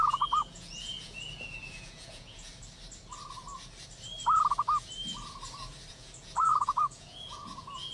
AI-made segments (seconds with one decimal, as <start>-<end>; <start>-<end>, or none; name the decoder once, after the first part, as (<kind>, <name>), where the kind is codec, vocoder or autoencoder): 0.0-2.5 (vocoder, Vocos); 5.9-7.9